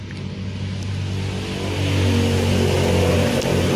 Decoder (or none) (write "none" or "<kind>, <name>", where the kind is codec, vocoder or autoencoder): none